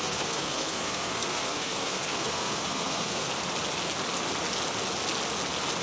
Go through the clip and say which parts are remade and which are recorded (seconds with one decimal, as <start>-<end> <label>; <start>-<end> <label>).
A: 0.0-3.3 remade; 3.3-5.8 recorded